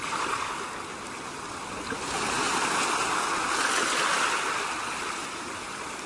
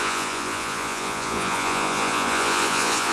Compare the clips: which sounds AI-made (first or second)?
second